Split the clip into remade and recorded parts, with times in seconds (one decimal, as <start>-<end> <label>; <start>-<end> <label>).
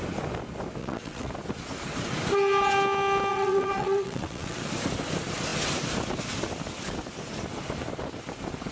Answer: 0.0-0.8 recorded; 0.8-1.3 remade; 1.3-3.3 recorded; 3.3-4.6 remade; 4.6-8.7 recorded